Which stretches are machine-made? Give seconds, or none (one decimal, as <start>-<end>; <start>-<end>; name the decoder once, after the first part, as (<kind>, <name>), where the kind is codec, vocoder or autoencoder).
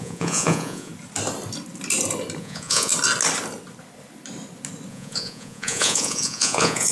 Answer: 0.0-0.9 (vocoder, Vocos); 2.4-2.9; 4.9-6.9